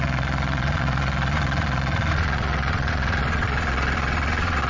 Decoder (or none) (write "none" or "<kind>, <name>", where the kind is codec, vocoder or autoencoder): vocoder, Vocos